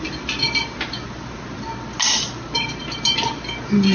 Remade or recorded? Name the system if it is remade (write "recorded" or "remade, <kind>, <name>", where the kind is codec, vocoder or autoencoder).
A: recorded